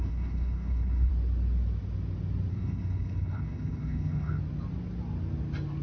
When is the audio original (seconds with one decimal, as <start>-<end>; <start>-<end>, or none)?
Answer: 1.1-2.5; 4.4-5.8